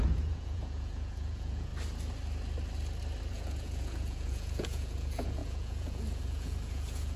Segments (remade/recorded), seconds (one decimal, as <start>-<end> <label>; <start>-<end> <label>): 0.0-1.7 remade; 1.7-3.3 recorded; 3.3-7.2 remade